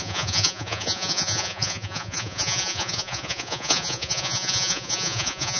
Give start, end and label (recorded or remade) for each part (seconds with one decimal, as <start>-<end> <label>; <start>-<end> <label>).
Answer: 0.0-5.6 remade